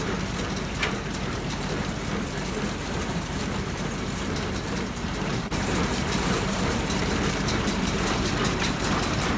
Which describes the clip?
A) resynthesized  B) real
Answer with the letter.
A